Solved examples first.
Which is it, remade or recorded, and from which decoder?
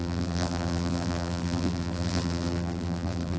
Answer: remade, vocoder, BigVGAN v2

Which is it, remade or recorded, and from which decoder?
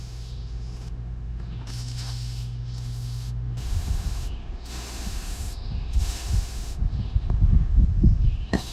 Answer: remade, autoencoder, DAC-VAE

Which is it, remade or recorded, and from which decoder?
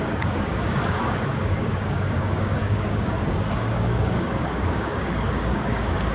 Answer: remade, codec, DAC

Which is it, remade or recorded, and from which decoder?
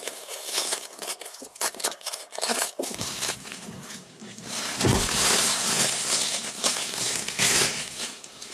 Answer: remade, codec, SNAC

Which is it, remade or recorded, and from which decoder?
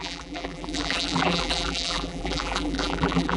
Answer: remade, vocoder, BigVGAN v2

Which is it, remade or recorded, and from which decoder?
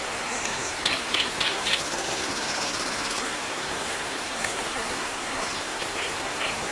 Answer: remade, codec, SNAC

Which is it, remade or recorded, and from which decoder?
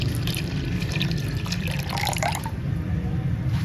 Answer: remade, vocoder, BigVGAN v2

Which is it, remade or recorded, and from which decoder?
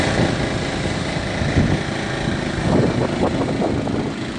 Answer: recorded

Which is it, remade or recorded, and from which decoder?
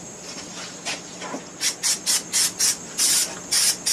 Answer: recorded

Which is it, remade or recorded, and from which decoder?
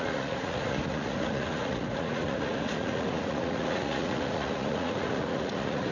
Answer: remade, vocoder, Vocos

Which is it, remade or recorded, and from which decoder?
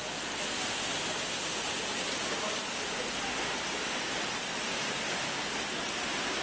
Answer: recorded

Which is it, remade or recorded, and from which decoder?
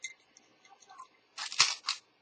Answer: recorded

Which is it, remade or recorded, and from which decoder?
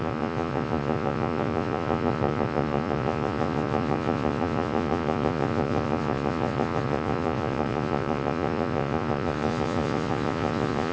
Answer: remade, vocoder, Vocos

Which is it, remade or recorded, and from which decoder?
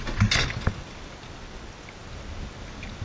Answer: recorded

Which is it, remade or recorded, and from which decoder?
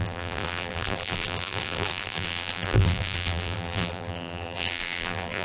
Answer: remade, vocoder, BigVGAN v2